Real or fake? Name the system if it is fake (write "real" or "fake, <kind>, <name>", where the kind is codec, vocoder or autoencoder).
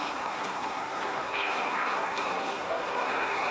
fake, codec, SNAC